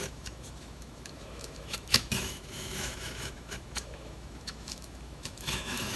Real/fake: fake